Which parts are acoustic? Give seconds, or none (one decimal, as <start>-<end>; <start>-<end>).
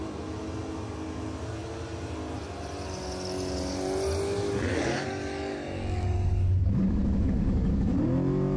0.0-4.7; 8.0-8.6